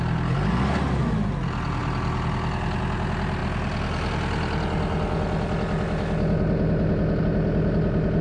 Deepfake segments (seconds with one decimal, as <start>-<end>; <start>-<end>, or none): none